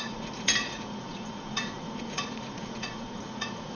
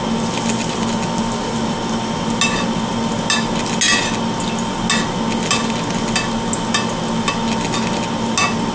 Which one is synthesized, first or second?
first